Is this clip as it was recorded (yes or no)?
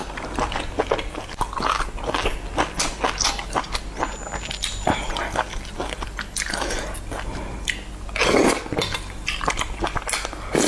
yes